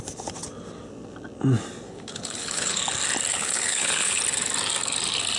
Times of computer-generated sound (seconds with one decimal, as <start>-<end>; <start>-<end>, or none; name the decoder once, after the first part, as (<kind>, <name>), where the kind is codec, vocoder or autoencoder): 1.9-2.8 (codec, HILCodec); 3.3-4.2